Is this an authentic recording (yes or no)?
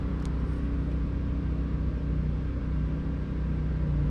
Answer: yes